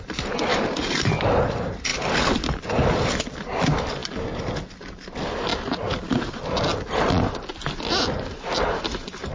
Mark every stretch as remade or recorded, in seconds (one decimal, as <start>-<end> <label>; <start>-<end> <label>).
0.0-9.3 recorded